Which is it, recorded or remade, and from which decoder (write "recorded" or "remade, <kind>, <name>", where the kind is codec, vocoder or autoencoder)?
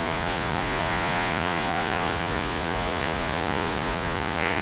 remade, vocoder, Vocos